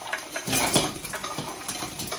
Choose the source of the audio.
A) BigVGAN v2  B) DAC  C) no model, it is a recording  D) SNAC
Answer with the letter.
A